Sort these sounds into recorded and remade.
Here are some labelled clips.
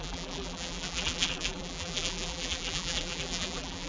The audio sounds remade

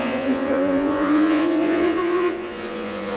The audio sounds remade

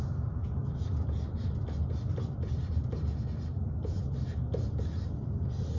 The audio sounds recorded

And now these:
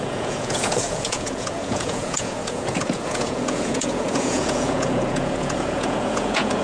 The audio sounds remade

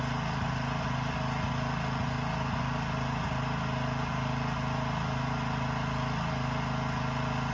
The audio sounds recorded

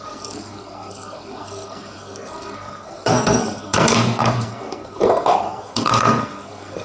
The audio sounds remade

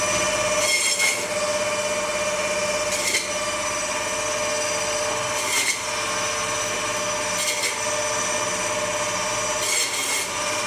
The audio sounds recorded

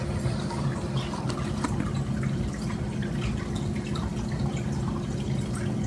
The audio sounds recorded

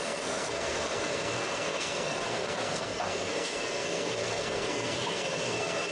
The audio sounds remade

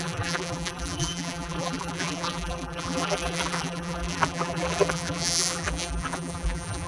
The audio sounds remade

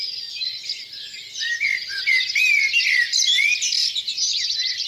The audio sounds recorded